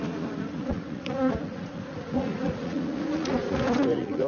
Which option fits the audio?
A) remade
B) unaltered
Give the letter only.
A